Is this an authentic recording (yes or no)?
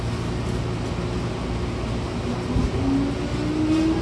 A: yes